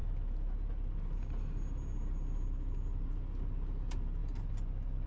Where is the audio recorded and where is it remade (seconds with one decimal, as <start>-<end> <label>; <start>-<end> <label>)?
0.0-5.1 recorded